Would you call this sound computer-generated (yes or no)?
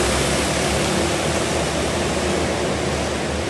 no